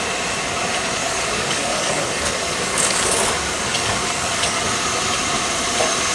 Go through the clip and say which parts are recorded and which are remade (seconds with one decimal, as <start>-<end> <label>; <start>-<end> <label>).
0.0-1.0 recorded; 1.0-4.7 remade; 4.7-6.1 recorded